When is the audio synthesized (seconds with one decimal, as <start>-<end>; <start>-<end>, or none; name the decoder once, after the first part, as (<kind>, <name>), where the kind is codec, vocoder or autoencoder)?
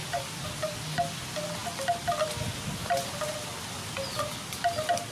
none